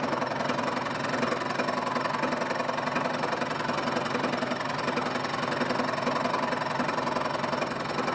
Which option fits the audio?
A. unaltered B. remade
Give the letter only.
A